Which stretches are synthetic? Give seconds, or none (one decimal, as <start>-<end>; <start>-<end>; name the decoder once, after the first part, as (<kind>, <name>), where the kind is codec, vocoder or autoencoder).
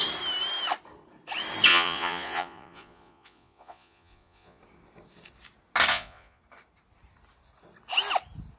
1.7-4.6 (vocoder, Vocos); 5.9-6.4